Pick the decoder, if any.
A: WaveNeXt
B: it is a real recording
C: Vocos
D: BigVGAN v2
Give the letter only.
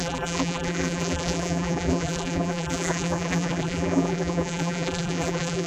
D